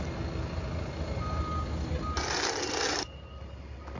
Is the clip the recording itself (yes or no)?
yes